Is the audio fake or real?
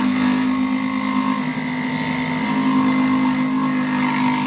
real